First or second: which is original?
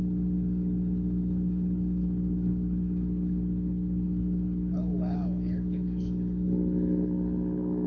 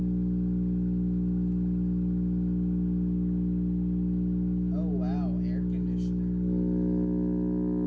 second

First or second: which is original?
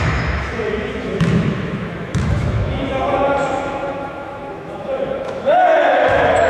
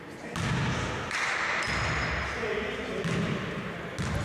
second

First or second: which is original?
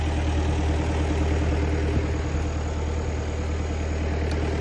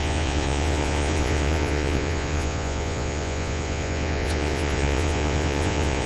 first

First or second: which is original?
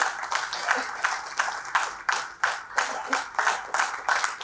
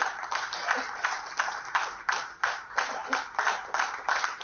first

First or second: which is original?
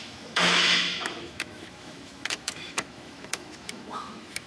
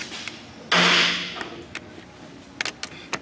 second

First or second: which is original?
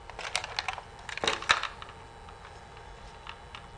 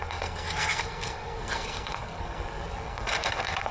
first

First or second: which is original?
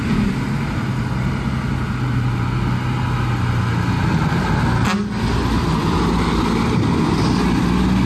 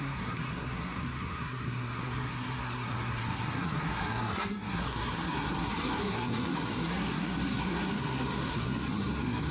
first